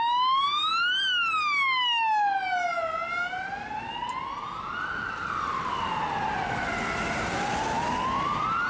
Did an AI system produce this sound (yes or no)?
no